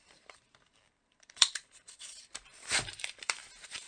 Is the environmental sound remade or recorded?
remade